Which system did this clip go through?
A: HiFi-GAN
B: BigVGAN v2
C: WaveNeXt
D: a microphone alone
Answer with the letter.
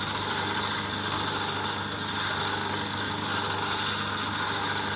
D